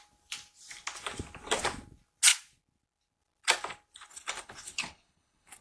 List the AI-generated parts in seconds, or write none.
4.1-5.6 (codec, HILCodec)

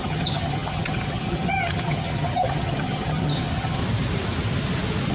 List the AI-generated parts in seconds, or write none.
0.0-3.8 (vocoder, HiFi-GAN)